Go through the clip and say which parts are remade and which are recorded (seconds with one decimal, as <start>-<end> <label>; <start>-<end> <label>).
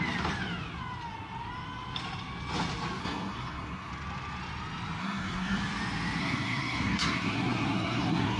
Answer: 0.0-3.0 recorded; 3.0-3.9 remade; 3.9-5.0 recorded; 5.0-5.6 remade; 5.6-6.2 recorded; 6.2-8.4 remade